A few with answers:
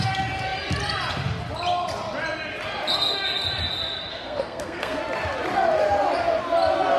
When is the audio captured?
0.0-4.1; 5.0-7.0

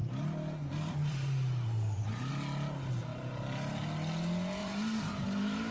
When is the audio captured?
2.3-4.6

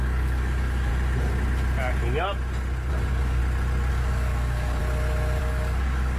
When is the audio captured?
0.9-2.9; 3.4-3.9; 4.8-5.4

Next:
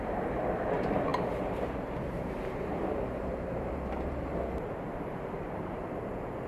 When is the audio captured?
none